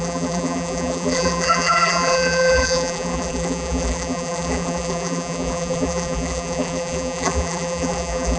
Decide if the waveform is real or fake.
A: fake